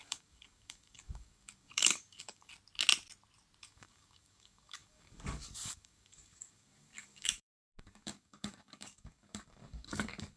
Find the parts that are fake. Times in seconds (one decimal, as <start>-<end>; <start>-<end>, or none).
0.0-2.5; 3.6-10.4